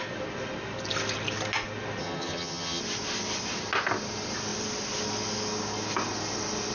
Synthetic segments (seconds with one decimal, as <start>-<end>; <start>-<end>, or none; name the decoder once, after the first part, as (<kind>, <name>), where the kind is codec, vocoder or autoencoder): 2.0-2.8 (vocoder, HiFi-GAN)